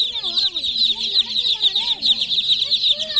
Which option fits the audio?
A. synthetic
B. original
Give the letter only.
B